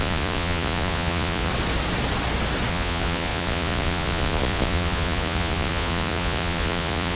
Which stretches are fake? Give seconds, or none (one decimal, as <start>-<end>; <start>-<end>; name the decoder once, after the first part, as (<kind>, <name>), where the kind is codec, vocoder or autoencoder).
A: 0.0-1.5 (vocoder, Vocos); 2.7-7.1